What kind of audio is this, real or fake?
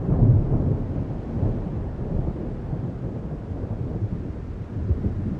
real